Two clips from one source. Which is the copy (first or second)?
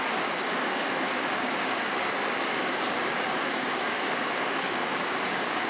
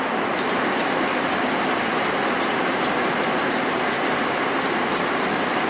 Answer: first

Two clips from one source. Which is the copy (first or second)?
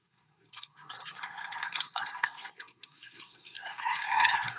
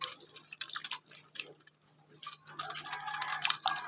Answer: first